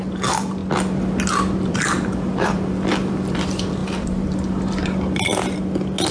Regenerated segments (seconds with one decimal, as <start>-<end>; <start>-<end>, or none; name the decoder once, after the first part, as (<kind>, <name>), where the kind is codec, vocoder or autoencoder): 0.0-0.6 (vocoder, BigVGAN v2); 1.7-5.3